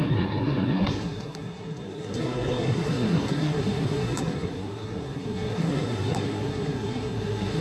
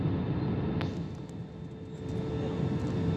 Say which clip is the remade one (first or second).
first